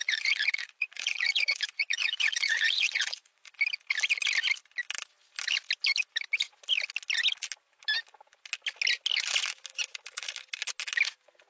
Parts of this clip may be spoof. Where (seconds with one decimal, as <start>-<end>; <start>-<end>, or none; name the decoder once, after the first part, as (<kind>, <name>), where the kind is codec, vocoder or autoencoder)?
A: 0.0-3.5 (vocoder, Vocos)